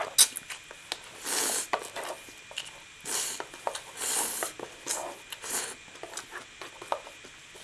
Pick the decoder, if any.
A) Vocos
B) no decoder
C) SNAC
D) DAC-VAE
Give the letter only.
B